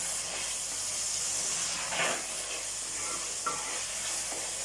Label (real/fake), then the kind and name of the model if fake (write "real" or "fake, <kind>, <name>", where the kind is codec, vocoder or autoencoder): real